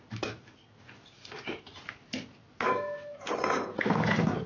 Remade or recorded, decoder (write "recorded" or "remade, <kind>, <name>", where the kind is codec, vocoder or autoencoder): recorded